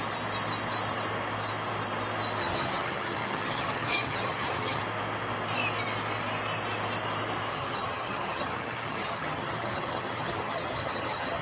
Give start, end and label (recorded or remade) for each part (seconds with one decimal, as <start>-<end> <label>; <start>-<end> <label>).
0.0-2.4 recorded; 2.4-4.8 remade; 4.8-7.5 recorded; 7.5-11.4 remade